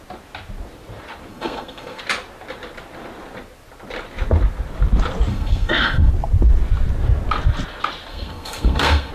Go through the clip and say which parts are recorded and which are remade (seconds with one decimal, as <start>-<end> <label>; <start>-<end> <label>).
0.0-1.3 recorded; 1.3-2.0 remade; 2.0-5.3 recorded; 5.3-6.1 remade; 6.1-8.1 recorded; 8.1-9.1 remade